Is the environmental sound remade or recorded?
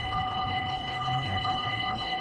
remade